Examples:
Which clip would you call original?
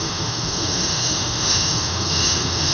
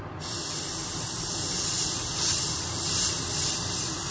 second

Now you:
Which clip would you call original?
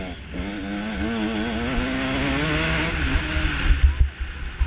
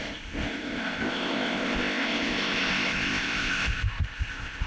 first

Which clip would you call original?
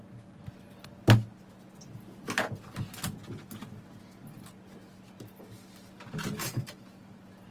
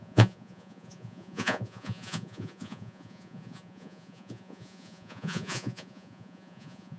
first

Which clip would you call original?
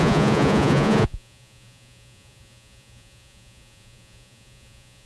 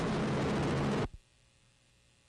second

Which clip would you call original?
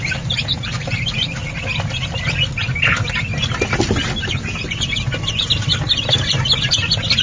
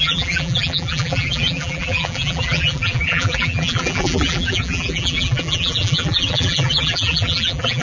first